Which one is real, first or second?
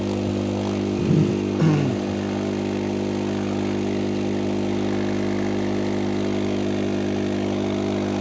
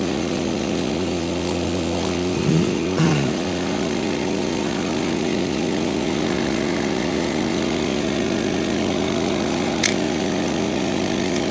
first